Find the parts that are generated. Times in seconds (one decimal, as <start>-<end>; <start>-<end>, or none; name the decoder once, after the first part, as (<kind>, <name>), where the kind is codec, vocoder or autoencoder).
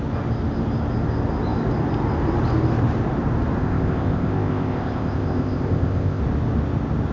3.6-6.2 (codec, ZipCodec)